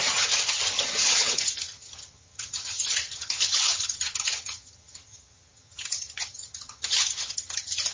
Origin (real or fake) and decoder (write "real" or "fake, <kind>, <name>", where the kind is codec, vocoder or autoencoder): fake, vocoder, HiFi-GAN